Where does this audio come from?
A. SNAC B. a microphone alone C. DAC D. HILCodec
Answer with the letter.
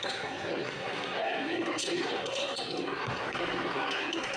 A